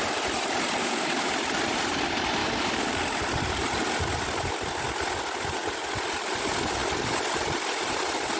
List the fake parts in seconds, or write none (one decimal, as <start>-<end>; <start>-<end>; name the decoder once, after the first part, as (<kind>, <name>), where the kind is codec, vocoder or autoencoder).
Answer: 0.8-1.3 (codec, DAC); 2.4-3.0